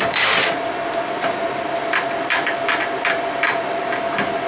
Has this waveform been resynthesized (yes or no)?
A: no